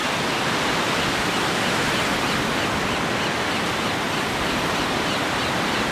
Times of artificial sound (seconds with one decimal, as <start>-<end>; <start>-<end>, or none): 3.5-5.9